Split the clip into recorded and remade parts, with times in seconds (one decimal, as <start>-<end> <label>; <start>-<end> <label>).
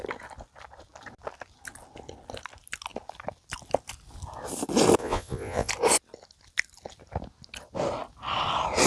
0.0-5.0 recorded; 5.0-5.7 remade; 5.7-8.9 recorded